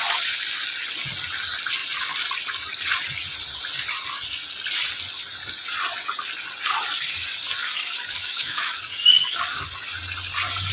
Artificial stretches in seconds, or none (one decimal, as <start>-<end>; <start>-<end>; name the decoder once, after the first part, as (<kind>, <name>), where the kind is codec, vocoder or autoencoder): 7.6-9.7 (codec, DAC)